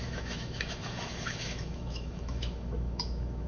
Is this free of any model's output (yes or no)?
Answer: no